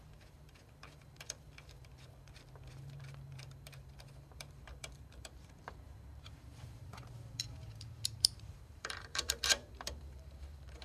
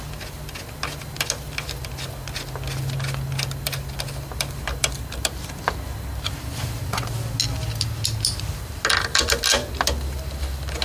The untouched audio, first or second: second